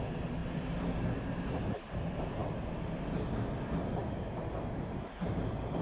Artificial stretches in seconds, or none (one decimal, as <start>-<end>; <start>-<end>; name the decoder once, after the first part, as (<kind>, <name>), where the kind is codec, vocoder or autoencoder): 4.0-5.3 (vocoder, BigVGAN v2)